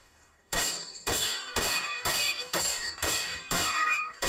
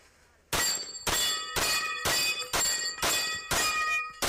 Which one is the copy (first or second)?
first